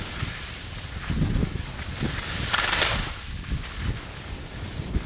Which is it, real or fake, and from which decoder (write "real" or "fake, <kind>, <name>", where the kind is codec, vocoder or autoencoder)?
real